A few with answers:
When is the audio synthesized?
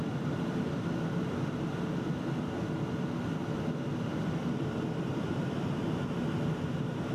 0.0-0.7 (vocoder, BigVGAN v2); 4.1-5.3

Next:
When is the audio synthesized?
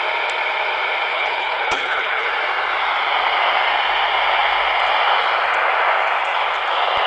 1.1-2.3 (codec, HILCodec)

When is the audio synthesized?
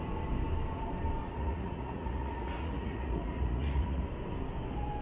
1.2-4.0 (vocoder, Vocos)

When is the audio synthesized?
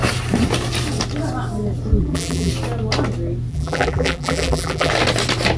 2.0-2.5 (vocoder, BigVGAN v2); 3.5-4.9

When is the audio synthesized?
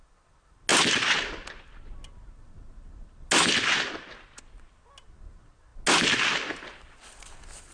none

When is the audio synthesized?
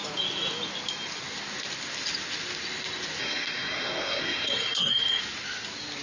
3.2-5.2 (codec, SNAC)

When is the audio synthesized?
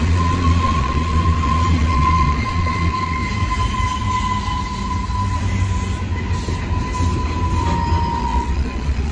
0.0-3.2 (vocoder, Vocos); 8.2-9.1